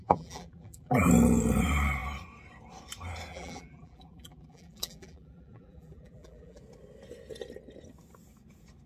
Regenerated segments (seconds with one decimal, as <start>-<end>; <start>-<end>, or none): 0.0-1.1; 3.3-6.6